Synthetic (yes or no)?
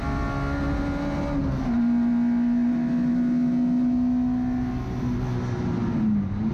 no